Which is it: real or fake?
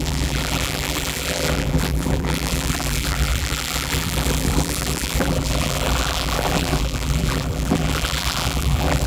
fake